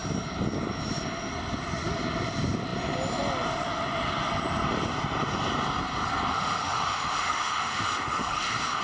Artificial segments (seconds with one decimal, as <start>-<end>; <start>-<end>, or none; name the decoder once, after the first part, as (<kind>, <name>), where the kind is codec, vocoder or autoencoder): 6.3-8.8 (autoencoder, DAC-VAE)